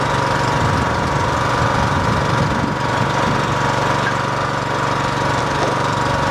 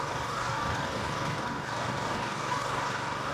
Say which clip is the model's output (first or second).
second